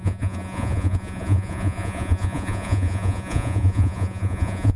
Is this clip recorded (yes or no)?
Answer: no